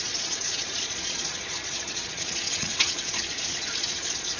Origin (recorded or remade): remade